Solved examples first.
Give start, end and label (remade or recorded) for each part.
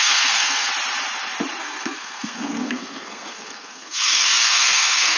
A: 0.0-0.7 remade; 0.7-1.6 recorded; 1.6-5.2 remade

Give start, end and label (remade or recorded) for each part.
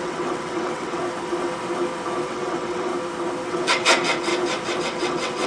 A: 0.0-1.0 remade; 1.0-2.2 recorded; 2.2-2.9 remade; 2.9-3.5 recorded; 3.5-4.3 remade; 4.3-4.8 recorded; 4.8-5.5 remade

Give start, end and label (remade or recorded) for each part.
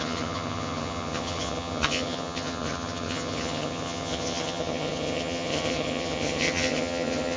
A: 0.0-7.4 remade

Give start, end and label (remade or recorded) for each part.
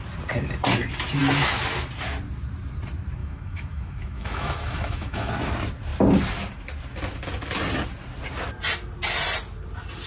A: 0.0-3.2 recorded; 3.2-5.3 remade; 5.3-10.1 recorded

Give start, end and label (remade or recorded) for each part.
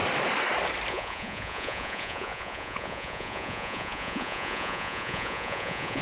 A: 0.0-0.9 recorded; 0.9-6.0 remade